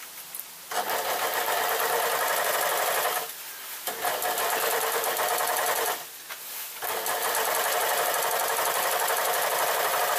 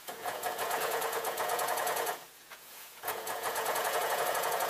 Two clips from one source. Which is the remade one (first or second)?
second